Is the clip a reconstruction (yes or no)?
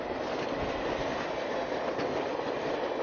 no